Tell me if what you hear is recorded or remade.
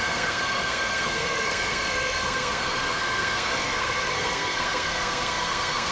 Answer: remade